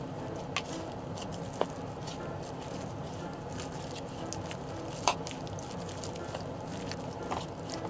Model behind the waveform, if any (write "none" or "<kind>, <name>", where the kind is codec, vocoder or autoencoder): none